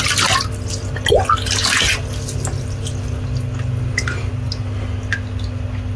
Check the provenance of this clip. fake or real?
real